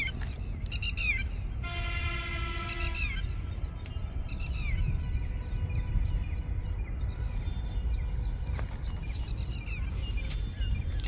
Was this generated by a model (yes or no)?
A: no